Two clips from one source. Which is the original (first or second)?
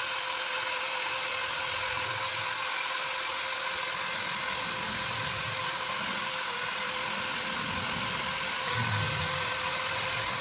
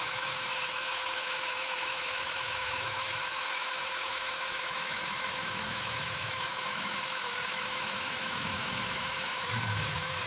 first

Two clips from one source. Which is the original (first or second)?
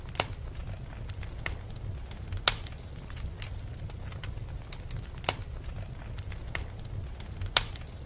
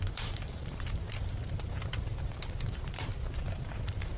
first